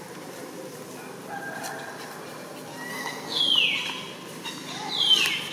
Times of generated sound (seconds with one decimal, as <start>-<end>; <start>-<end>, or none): 2.9-3.4